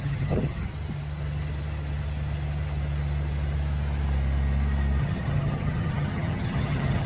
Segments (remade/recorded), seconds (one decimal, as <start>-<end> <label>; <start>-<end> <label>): 0.0-0.7 remade; 0.7-5.0 recorded; 5.0-7.1 remade